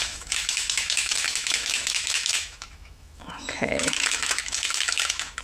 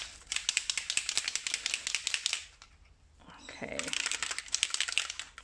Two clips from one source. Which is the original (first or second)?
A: second